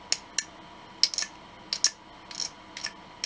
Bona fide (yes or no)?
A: yes